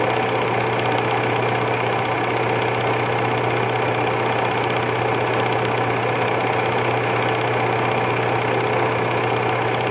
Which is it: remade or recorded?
recorded